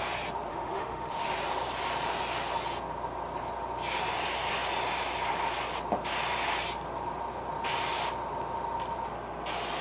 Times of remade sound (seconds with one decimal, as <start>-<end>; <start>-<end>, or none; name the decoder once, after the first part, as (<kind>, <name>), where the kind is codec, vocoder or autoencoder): 0.5-1.3 (autoencoder, DAC-VAE)